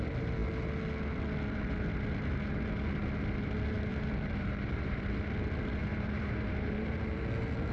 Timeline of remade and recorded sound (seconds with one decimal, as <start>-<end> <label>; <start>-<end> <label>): 0.0-3.9 recorded; 3.9-5.1 remade; 5.1-5.8 recorded; 5.8-7.2 remade; 7.2-7.7 recorded